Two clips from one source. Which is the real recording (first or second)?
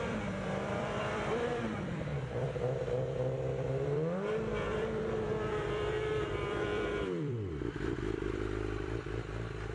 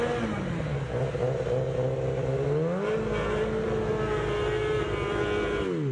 second